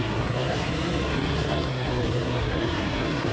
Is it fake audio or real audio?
fake